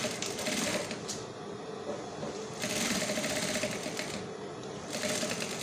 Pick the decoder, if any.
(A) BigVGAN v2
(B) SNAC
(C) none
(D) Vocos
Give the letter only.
C